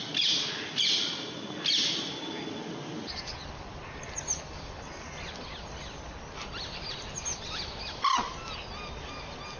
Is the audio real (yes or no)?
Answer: yes